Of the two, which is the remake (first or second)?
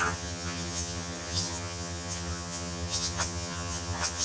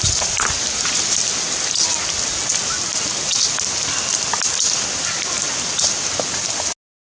first